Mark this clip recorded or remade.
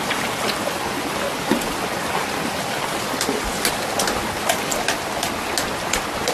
recorded